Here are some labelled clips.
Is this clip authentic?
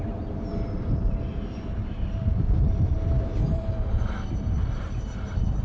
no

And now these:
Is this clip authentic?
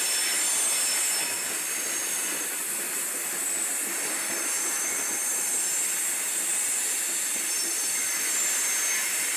yes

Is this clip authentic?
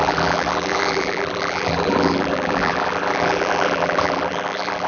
no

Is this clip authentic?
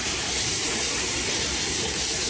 no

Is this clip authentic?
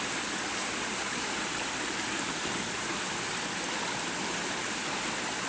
no